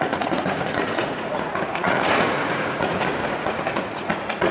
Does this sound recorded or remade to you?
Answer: remade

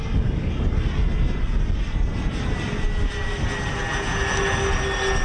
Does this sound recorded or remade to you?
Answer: recorded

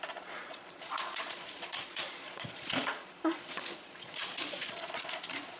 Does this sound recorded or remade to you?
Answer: remade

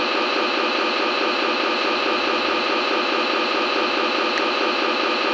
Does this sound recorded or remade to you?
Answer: recorded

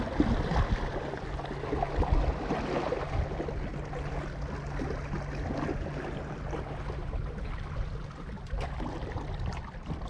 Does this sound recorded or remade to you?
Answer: recorded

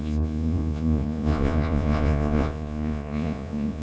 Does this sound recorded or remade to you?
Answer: remade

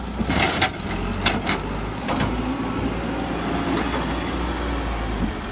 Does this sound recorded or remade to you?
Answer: recorded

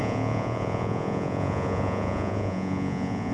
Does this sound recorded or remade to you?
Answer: remade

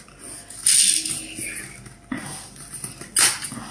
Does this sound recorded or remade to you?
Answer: recorded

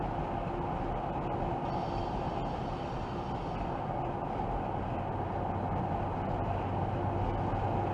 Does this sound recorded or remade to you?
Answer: recorded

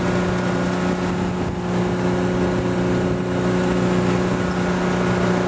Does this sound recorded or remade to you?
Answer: recorded